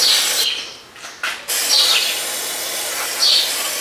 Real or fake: real